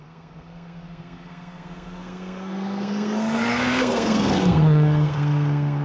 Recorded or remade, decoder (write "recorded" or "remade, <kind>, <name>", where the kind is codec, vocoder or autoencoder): remade, codec, SNAC